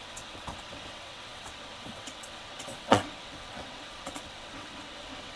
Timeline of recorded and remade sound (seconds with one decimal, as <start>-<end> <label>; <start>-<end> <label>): 0.0-5.4 remade